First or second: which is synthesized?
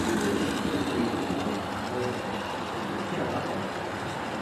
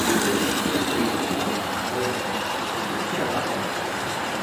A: second